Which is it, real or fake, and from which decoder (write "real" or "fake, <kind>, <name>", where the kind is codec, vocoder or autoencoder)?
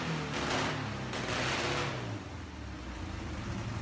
real